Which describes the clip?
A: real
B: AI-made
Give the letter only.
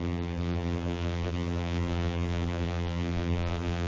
B